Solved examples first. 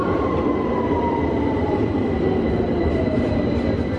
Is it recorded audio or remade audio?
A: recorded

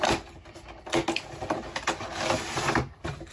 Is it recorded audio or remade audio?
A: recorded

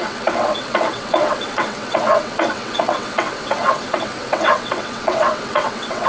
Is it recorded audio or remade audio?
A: remade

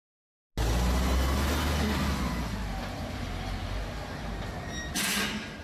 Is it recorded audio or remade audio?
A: recorded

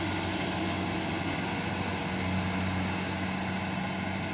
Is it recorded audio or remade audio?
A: recorded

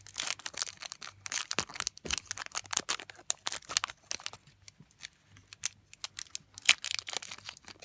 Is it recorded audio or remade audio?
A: recorded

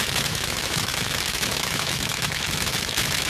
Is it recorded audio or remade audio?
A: remade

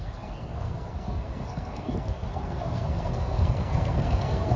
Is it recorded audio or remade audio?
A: remade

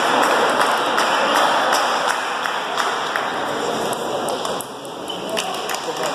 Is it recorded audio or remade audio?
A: recorded